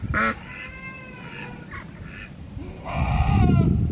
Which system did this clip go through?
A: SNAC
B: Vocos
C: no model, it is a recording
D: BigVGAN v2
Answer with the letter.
C